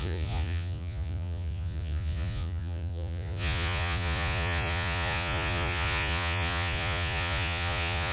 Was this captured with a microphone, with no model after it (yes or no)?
no